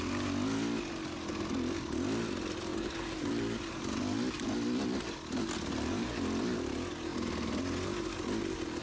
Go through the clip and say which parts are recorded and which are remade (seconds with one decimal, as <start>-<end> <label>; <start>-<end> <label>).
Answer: 0.0-2.7 recorded; 2.7-3.8 remade; 3.8-8.8 recorded